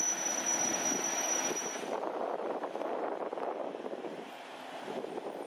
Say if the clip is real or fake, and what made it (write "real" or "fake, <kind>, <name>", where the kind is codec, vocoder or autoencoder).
fake, vocoder, BigVGAN v2